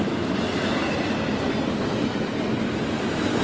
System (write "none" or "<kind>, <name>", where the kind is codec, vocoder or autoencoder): vocoder, BigVGAN v2